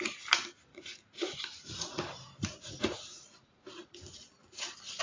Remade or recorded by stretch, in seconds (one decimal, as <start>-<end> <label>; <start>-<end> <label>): 0.0-0.7 recorded; 0.7-2.0 remade; 2.0-2.5 recorded; 2.5-3.9 remade; 3.9-4.4 recorded; 4.4-5.0 remade